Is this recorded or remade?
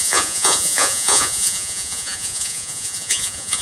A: remade